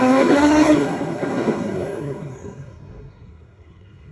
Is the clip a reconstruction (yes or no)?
yes